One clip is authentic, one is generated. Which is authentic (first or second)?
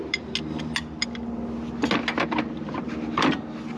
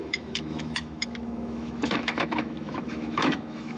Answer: first